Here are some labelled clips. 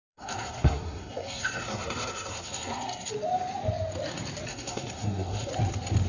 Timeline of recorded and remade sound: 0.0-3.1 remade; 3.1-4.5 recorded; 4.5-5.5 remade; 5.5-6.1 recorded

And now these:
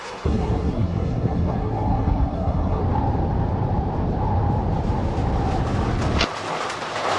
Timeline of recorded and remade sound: 0.0-2.8 remade; 2.8-7.2 recorded